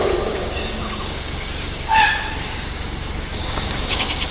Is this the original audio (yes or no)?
no